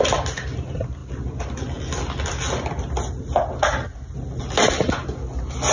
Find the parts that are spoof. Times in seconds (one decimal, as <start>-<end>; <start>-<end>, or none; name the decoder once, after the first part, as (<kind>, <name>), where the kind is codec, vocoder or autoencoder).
none